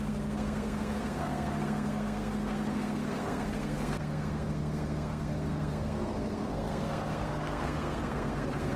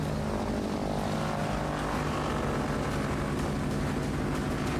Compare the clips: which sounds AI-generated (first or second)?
first